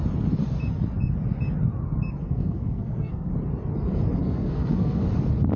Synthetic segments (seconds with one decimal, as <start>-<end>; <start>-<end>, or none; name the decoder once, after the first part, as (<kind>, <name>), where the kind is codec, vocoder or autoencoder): 2.2-3.3 (codec, SNAC); 4.2-5.0